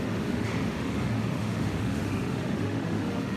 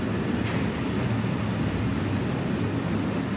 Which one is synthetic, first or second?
first